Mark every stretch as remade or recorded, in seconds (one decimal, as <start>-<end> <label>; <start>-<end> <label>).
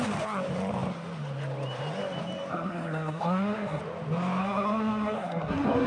0.0-2.5 recorded; 2.5-3.8 remade; 3.8-4.4 recorded; 4.4-5.9 remade